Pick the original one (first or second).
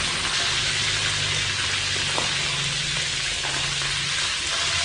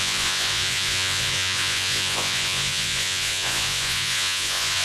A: first